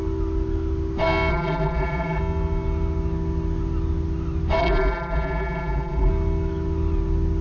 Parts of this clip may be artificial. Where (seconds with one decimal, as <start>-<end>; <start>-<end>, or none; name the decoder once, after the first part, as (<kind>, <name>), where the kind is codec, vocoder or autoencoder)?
1.3-2.2 (vocoder, BigVGAN v2); 4.6-6.1